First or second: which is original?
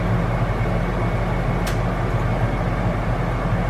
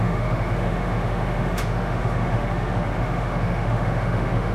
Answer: first